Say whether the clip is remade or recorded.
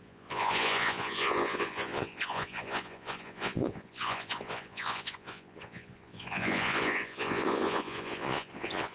remade